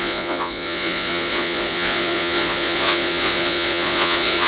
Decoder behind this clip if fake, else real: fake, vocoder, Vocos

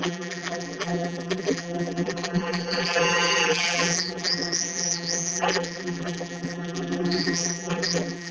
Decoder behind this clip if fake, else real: fake, vocoder, BigVGAN v2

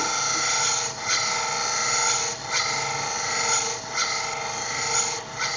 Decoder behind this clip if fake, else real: real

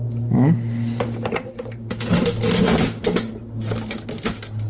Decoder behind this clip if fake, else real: real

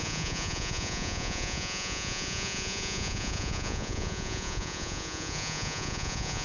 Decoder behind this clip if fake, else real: fake, vocoder, Vocos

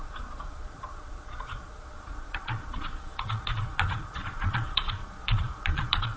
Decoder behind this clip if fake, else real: fake, vocoder, Vocos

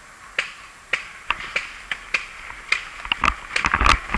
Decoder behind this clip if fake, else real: real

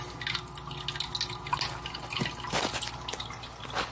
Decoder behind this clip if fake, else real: real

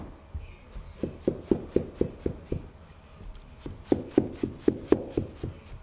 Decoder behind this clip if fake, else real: real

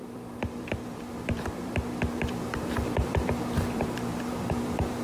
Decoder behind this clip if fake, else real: fake, vocoder, BigVGAN v2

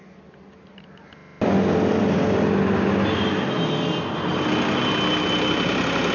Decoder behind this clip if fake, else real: real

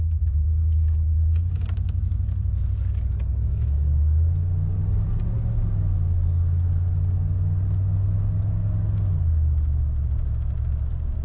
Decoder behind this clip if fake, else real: real